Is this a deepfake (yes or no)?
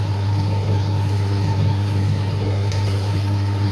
yes